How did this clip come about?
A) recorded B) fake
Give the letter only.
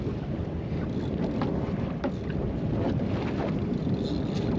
A